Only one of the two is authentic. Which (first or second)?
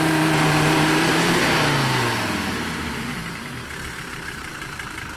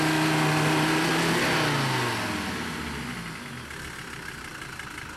second